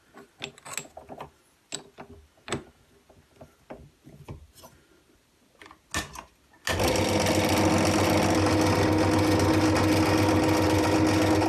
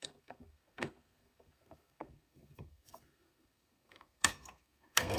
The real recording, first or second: first